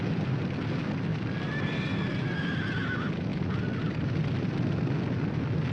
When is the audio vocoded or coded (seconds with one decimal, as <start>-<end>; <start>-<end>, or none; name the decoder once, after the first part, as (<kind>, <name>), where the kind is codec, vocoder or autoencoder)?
none